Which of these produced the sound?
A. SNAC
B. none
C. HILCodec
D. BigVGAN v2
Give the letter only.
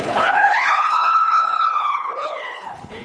C